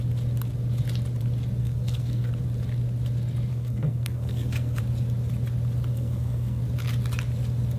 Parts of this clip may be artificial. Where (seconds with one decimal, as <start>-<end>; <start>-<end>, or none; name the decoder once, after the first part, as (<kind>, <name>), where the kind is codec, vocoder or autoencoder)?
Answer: 1.6-2.3 (codec, SNAC); 3.5-4.8; 5.9-6.6